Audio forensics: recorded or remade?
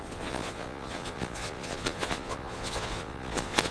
remade